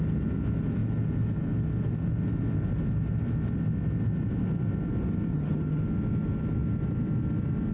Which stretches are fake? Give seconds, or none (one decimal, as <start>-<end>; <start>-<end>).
5.3-5.8